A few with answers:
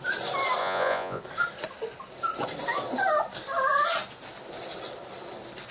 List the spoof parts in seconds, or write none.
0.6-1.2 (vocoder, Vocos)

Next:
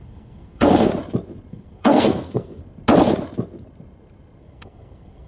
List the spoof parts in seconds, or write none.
0.0-0.9 (codec, SNAC); 1.5-2.6; 4.4-5.3

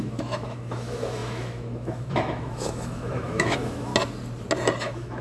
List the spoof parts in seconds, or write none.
0.0-3.9 (autoencoder, DAC-VAE); 4.8-5.2